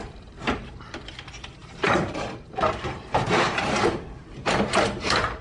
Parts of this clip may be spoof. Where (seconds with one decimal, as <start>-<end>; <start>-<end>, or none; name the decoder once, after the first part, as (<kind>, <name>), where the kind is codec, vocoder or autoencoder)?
0.0-5.4 (vocoder, BigVGAN v2)